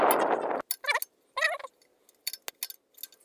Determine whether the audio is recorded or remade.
recorded